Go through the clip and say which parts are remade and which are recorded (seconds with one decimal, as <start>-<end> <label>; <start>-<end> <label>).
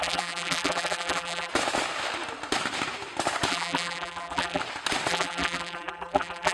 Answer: 0.0-1.5 remade; 1.5-3.5 recorded; 3.5-4.6 remade; 4.6-5.1 recorded; 5.1-6.5 remade